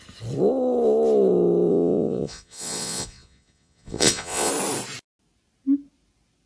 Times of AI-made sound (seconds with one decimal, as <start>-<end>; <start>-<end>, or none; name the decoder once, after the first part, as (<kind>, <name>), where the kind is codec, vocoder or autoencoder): 1.7-4.5 (vocoder, Vocos)